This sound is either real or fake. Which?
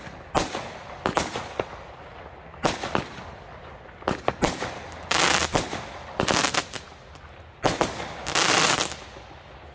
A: real